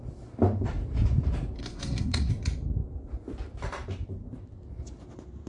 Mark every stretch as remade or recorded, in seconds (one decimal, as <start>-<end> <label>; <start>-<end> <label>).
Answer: 0.0-1.6 recorded; 1.6-2.3 remade; 2.3-5.5 recorded